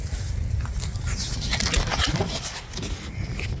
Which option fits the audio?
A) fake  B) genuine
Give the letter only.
B